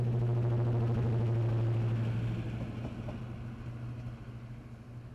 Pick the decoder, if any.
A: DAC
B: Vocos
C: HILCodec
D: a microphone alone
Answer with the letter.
D